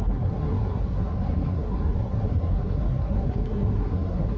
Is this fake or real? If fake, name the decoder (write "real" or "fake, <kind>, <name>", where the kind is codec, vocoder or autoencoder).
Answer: fake, codec, SNAC